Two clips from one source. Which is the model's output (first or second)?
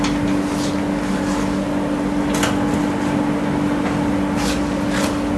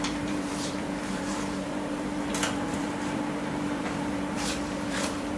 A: second